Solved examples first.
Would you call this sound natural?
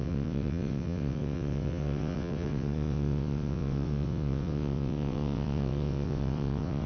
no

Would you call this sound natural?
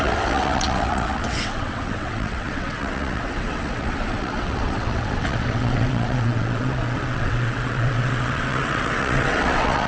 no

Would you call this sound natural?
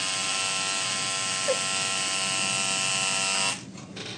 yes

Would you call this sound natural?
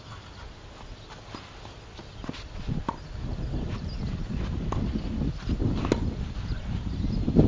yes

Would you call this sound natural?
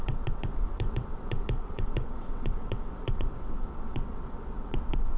no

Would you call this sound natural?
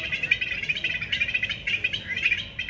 yes